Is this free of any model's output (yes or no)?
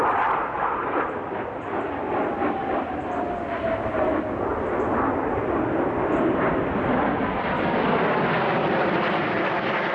yes